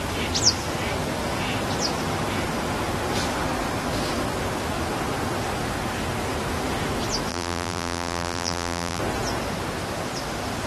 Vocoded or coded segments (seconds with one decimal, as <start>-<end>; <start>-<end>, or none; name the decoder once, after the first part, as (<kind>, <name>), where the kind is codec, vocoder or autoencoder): 7.3-9.0 (vocoder, BigVGAN v2)